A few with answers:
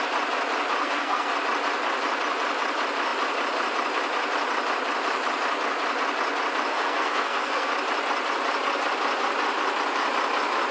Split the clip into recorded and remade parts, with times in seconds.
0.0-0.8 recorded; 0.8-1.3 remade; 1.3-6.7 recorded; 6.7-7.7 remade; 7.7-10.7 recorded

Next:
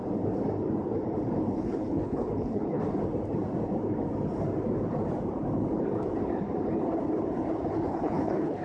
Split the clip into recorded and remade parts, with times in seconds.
0.0-1.5 recorded; 1.5-2.8 remade; 2.8-7.9 recorded; 7.9-8.6 remade

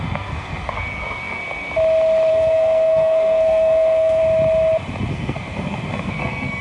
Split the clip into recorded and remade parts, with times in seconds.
0.0-1.4 remade; 1.4-2.3 recorded; 2.3-4.2 remade; 4.2-5.1 recorded; 5.1-6.6 remade

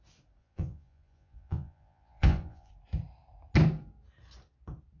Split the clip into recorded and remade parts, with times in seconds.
0.0-0.4 recorded; 0.4-2.7 remade; 2.7-5.0 recorded

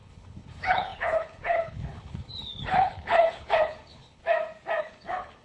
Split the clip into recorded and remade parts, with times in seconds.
0.0-4.2 remade; 4.2-4.8 recorded; 4.8-5.4 remade

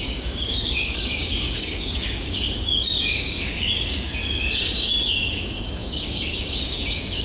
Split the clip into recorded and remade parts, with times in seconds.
0.0-7.2 remade